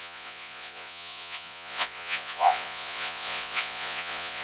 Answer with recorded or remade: remade